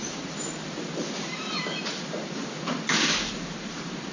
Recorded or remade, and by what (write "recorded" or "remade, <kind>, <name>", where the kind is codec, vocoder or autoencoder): remade, vocoder, BigVGAN v2